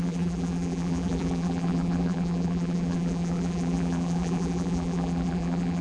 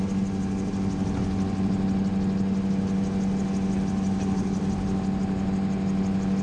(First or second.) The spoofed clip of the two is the first